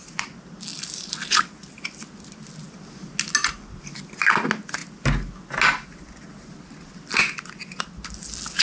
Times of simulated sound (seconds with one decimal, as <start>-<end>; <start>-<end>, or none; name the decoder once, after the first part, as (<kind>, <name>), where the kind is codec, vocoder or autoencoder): none